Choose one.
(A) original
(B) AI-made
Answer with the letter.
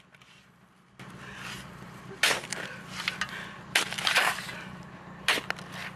A